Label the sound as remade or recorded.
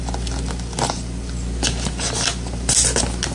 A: recorded